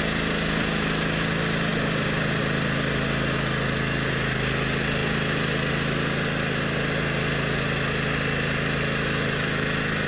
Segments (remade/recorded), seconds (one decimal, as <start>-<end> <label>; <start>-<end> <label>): 0.0-10.1 recorded

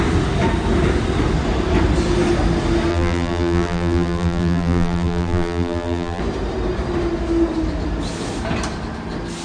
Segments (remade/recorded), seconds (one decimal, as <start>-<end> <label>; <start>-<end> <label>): 0.0-2.9 recorded; 2.9-6.2 remade; 6.2-9.4 recorded

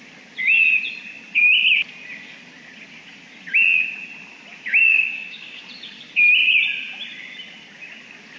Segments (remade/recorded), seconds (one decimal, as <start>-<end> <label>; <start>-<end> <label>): 0.0-4.8 recorded; 4.8-5.6 remade; 5.6-8.4 recorded

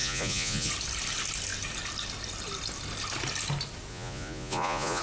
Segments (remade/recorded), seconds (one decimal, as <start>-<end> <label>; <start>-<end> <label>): 0.0-0.7 remade; 0.7-3.9 recorded; 3.9-5.0 remade